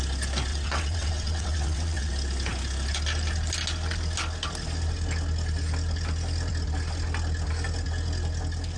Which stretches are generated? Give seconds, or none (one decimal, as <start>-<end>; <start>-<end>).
0.5-2.1